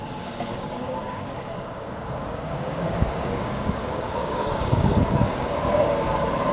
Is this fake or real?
fake